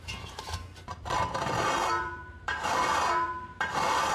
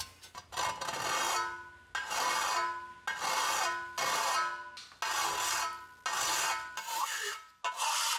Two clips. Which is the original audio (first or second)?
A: second